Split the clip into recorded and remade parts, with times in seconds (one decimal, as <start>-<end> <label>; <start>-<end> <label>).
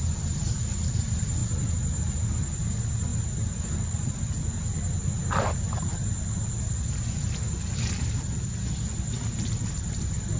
0.0-10.4 recorded